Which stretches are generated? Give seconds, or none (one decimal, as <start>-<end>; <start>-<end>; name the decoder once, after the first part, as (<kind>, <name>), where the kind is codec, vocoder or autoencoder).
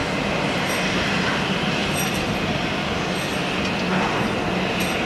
none